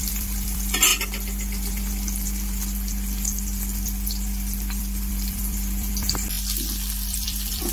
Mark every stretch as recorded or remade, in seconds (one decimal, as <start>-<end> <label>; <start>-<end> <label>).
0.0-0.9 remade; 0.9-5.1 recorded; 5.1-7.7 remade